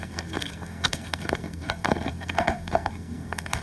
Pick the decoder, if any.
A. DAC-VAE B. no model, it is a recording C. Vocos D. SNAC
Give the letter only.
D